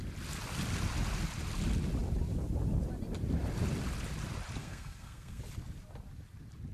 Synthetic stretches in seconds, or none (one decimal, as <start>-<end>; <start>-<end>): 4.6-5.4